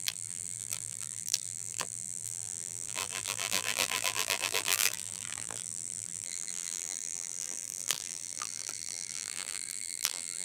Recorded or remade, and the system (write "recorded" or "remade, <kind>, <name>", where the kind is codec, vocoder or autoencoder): remade, vocoder, BigVGAN v2